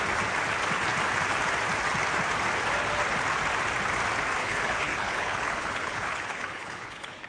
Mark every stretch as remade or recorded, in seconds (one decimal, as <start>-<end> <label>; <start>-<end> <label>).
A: 0.0-4.4 recorded; 4.4-7.3 remade